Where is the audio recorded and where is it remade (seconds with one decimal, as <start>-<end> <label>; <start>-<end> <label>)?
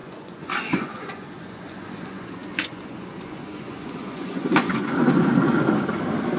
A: 0.0-5.3 remade; 5.3-6.4 recorded